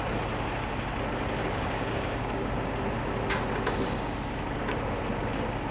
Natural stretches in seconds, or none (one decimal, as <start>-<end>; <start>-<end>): 0.0-1.4; 2.5-5.7